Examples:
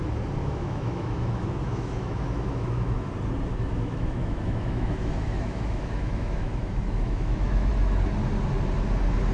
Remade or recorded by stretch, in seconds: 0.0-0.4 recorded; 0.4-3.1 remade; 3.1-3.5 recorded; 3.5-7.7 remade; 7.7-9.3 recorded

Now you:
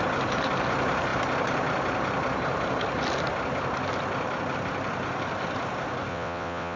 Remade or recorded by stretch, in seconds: 0.0-6.1 recorded; 6.1-6.8 remade

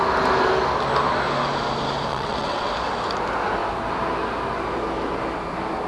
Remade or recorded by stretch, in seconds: 0.0-2.1 recorded; 2.1-2.7 remade; 2.7-5.9 recorded